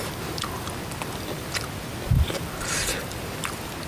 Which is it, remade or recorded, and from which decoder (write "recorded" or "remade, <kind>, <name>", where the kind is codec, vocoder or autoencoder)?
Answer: recorded